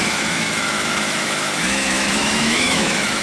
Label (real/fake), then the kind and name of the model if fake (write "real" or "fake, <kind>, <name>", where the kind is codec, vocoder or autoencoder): fake, autoencoder, DAC-VAE